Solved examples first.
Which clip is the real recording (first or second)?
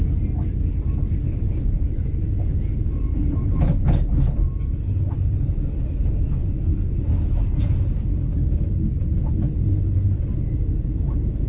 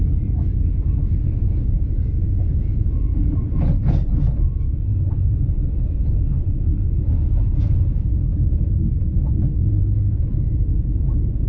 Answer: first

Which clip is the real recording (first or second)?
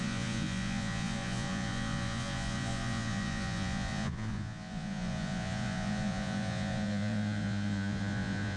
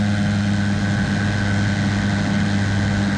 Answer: second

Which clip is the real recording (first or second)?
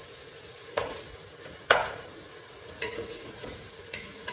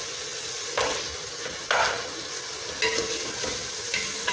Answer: second